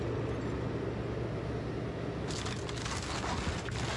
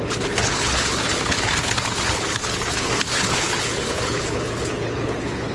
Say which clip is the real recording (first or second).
first